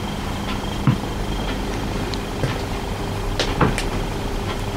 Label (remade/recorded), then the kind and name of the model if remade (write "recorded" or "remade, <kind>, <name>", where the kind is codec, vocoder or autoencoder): recorded